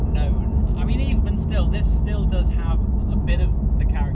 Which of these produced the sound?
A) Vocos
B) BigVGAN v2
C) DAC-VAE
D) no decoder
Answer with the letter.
D